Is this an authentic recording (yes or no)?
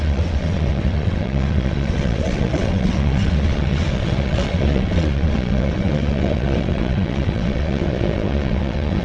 no